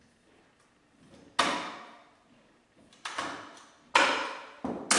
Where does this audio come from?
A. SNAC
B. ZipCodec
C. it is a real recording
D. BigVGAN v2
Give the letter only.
C